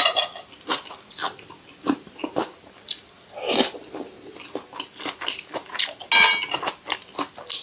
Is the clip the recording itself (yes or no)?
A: yes